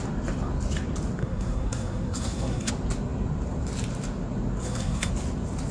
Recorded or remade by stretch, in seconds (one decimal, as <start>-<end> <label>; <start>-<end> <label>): 0.0-1.2 recorded; 1.2-2.7 remade; 2.7-4.6 recorded; 4.6-5.1 remade; 5.1-5.7 recorded